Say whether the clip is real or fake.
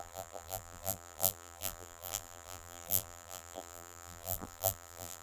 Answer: fake